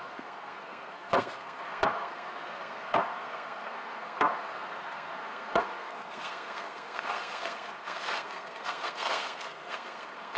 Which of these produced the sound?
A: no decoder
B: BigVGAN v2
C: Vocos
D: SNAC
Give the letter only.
D